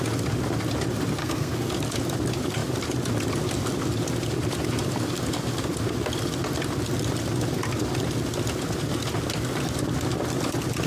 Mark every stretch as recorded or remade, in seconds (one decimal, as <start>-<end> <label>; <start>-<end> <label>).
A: 0.0-1.2 recorded; 1.2-1.7 remade; 1.7-10.9 recorded

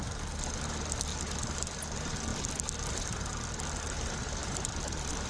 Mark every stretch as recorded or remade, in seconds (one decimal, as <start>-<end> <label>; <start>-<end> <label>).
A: 0.0-4.4 recorded; 4.4-5.3 remade